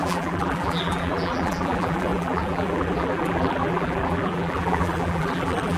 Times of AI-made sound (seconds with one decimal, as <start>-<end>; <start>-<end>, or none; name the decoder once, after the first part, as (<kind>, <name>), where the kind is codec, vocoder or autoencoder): 0.0-5.8 (vocoder, BigVGAN v2)